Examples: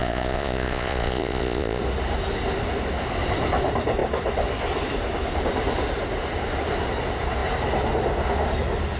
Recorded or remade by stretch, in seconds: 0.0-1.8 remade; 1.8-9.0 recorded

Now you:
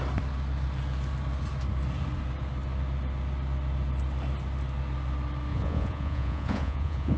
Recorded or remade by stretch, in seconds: 0.0-5.5 recorded; 5.5-7.2 remade

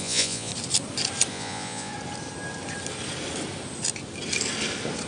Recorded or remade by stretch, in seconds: 0.0-0.5 remade; 0.5-1.3 recorded; 1.3-1.9 remade; 1.9-5.1 recorded

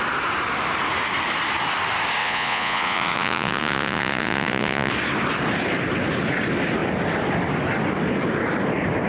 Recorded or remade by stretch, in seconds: 0.0-2.2 recorded; 2.2-4.9 remade; 4.9-9.1 recorded

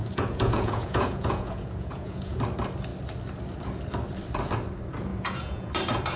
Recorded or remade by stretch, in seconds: 0.0-2.4 remade; 2.4-5.1 recorded; 5.1-5.7 remade; 5.7-6.2 recorded

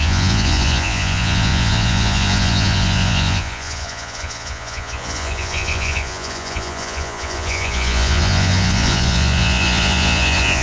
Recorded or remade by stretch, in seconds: 0.0-10.6 remade